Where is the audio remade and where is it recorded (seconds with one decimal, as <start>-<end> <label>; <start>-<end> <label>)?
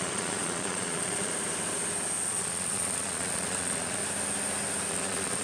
0.0-1.3 remade; 1.3-2.3 recorded; 2.3-4.0 remade; 4.0-4.9 recorded; 4.9-5.4 remade